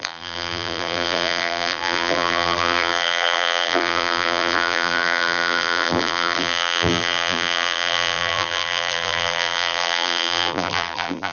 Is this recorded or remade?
remade